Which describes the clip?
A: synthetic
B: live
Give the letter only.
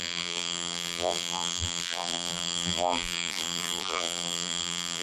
A